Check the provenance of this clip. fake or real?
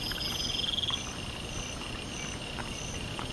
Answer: real